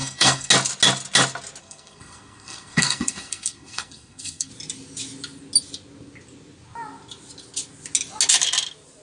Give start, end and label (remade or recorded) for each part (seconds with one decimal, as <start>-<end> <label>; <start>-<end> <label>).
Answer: 0.0-0.5 remade; 0.5-1.6 recorded; 1.6-4.5 remade; 4.5-9.0 recorded